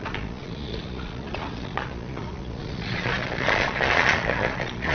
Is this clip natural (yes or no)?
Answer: no